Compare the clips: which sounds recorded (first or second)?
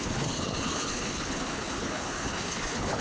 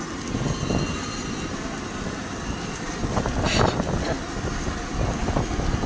second